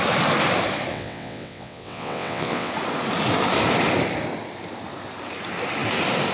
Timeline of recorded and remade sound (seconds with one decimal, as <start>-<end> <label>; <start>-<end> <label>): 0.0-0.9 recorded; 0.9-2.7 remade; 2.7-6.3 recorded